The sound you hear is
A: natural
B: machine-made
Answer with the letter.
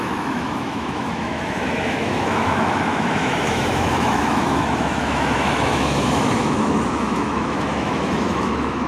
B